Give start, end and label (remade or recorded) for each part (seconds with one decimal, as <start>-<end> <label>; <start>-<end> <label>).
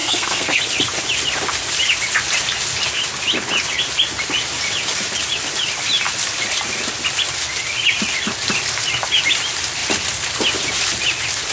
0.0-0.6 remade; 0.6-11.5 recorded